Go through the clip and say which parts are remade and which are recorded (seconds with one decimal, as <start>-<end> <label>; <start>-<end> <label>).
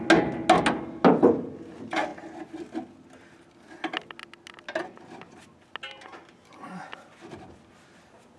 0.0-8.4 recorded